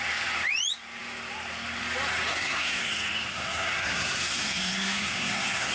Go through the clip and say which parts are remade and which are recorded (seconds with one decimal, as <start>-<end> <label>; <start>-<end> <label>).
0.0-2.3 recorded; 2.3-2.9 remade; 2.9-3.3 recorded; 3.3-5.7 remade